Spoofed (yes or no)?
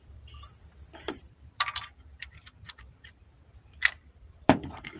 yes